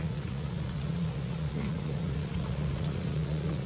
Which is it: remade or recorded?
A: remade